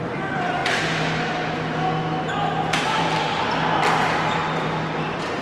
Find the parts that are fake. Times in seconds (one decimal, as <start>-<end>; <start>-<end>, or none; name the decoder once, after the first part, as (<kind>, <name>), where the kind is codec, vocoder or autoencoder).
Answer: 0.0-0.6 (vocoder, BigVGAN v2); 3.0-4.4; 5.0-5.4